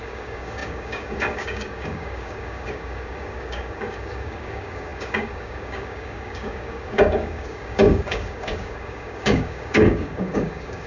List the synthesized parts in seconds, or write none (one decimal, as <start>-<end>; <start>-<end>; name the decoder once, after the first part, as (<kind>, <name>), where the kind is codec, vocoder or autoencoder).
0.0-10.9 (codec, DAC)